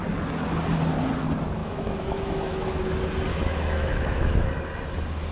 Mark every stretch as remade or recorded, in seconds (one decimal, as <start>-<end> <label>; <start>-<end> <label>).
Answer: 0.0-1.6 recorded; 1.6-2.8 remade; 2.8-3.3 recorded; 3.3-4.5 remade; 4.5-5.3 recorded